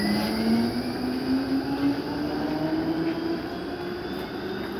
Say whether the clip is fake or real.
real